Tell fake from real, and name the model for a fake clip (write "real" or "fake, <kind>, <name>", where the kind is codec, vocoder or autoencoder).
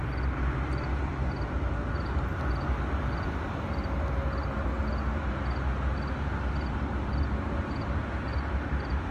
real